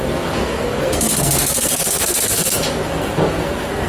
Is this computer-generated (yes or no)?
yes